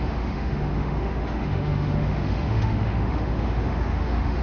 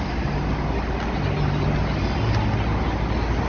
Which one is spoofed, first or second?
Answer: first